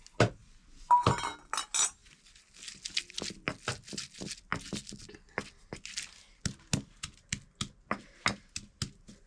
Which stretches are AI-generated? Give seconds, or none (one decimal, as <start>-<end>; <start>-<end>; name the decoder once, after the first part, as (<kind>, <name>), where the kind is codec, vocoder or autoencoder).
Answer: none